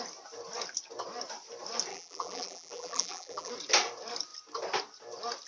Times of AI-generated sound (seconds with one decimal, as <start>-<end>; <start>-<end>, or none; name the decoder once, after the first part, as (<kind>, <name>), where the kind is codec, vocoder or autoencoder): 1.9-3.5 (vocoder, BigVGAN v2)